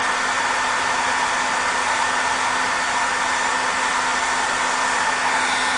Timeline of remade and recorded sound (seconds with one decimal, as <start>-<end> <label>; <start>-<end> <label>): 0.0-5.8 recorded

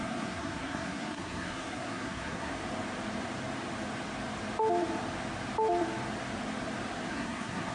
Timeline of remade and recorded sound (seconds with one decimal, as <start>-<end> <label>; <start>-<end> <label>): 0.0-2.5 remade; 2.5-7.1 recorded; 7.1-7.7 remade

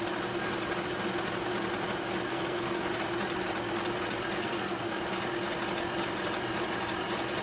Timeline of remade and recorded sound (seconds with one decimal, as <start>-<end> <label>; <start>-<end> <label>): 0.0-2.3 recorded; 2.3-2.8 remade; 2.8-4.4 recorded; 4.4-5.0 remade; 5.0-7.4 recorded

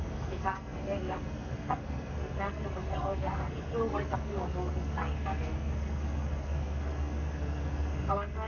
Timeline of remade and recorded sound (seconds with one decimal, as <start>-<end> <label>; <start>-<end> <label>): 0.0-8.5 remade

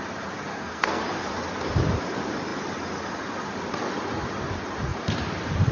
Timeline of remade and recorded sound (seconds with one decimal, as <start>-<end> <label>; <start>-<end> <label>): 0.0-0.5 recorded; 0.5-1.0 remade; 1.0-5.7 recorded

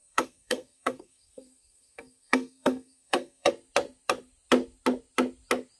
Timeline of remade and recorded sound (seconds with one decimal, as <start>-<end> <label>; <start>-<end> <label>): 0.0-3.5 remade; 3.5-5.8 recorded

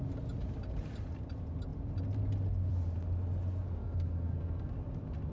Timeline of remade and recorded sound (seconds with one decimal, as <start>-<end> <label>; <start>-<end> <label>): 0.0-3.8 recorded; 3.8-4.7 remade; 4.7-5.3 recorded

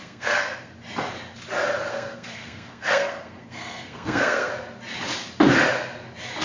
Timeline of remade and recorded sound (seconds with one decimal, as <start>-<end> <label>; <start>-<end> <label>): 0.0-0.7 remade; 0.7-1.9 recorded; 1.9-4.5 remade; 4.5-6.4 recorded